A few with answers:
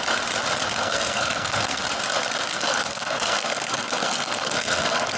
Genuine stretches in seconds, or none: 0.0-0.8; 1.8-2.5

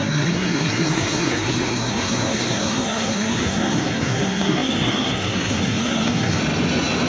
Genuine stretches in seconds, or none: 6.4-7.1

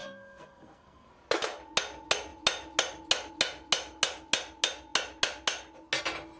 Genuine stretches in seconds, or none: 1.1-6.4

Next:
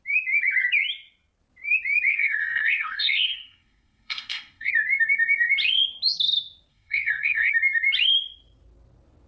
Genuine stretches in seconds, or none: 0.0-2.1; 4.7-6.7; 7.5-9.3

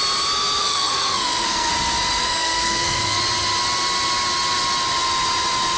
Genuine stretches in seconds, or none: 0.0-0.6; 1.7-2.2; 3.2-5.8

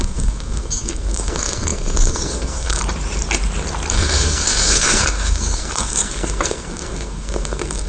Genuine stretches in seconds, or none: 2.8-3.9

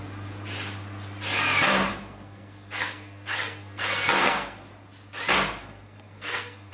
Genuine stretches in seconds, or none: 0.0-1.9; 4.7-5.6

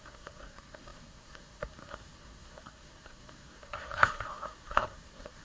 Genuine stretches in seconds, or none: none